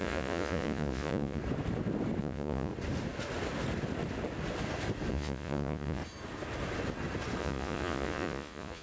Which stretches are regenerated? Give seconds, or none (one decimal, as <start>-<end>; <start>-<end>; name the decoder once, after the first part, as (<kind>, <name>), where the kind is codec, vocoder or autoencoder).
0.0-1.4 (vocoder, Vocos); 2.2-2.7; 5.1-6.0; 7.4-8.8